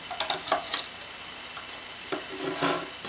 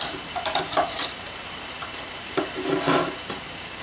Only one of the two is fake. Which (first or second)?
second